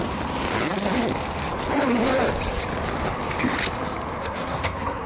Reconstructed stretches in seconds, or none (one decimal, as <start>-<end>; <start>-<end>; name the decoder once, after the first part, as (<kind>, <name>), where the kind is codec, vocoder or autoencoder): 4.2-5.1 (codec, SNAC)